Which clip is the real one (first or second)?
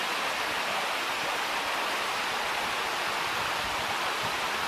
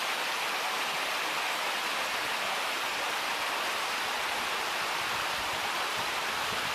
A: first